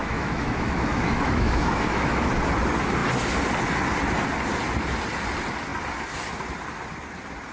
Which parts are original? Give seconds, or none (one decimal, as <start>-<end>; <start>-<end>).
2.3-7.5